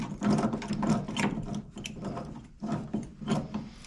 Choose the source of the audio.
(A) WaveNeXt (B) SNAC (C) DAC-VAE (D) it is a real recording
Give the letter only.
D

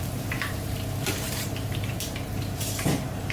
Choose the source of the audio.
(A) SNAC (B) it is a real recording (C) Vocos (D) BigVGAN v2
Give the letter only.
D